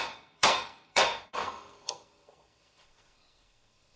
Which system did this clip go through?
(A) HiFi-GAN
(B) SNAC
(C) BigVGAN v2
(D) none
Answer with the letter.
B